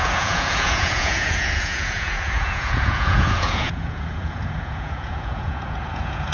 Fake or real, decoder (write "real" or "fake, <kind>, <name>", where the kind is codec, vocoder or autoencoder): fake, vocoder, Vocos